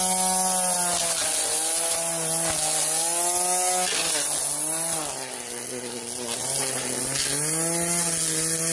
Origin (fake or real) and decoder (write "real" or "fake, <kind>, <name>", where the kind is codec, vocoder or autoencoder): real